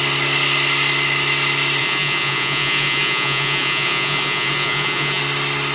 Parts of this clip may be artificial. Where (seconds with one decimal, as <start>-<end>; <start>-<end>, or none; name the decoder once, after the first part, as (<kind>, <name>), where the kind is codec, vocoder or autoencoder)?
1.8-5.2 (vocoder, Vocos)